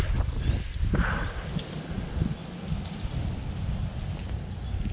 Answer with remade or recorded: recorded